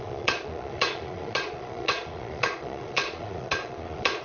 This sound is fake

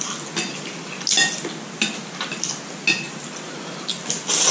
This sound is real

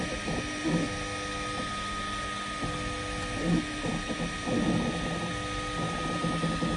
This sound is real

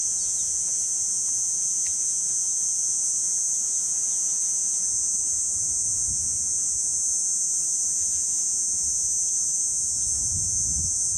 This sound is fake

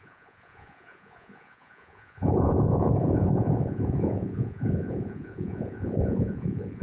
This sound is fake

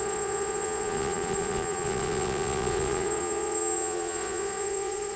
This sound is fake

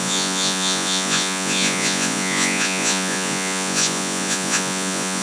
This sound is fake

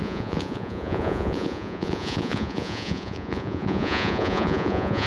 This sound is fake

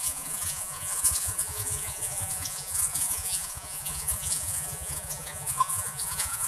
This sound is fake